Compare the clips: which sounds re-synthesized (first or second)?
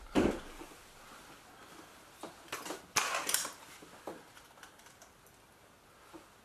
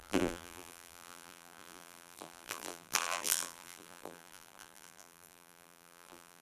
second